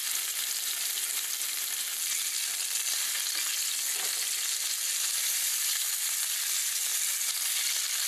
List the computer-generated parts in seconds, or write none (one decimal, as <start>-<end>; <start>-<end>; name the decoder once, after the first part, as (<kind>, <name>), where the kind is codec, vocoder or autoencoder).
none